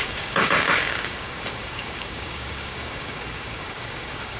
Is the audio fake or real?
fake